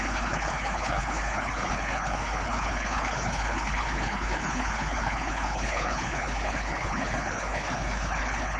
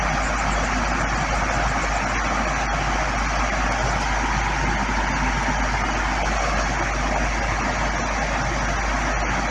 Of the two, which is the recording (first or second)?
second